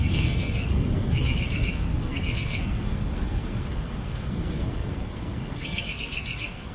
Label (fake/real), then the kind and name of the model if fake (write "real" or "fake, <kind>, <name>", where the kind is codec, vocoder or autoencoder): fake, codec, SNAC